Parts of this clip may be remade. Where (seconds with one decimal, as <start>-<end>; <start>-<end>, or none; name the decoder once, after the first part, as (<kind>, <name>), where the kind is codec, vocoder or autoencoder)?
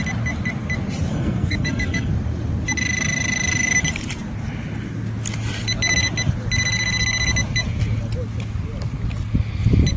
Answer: 1.1-2.1 (codec, SNAC)